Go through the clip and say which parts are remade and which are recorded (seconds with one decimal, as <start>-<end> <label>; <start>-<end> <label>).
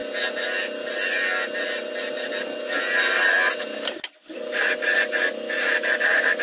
0.0-6.4 recorded